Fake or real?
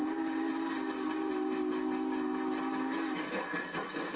real